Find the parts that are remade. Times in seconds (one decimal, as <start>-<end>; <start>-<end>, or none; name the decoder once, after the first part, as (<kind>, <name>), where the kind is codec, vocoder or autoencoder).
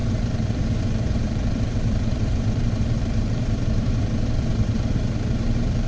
0.0-5.9 (vocoder, BigVGAN v2)